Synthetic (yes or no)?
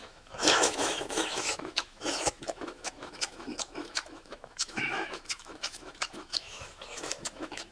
yes